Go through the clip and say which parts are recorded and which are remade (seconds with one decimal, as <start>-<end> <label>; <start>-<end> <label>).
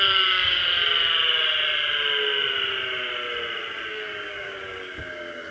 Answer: 0.0-0.6 remade; 0.6-3.9 recorded; 3.9-5.5 remade